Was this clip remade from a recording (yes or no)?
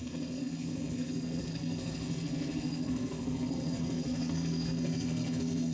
yes